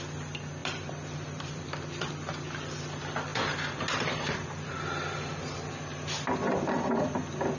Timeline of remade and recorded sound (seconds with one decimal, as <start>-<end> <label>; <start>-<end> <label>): 0.0-0.6 recorded; 0.6-2.1 remade; 2.1-7.6 recorded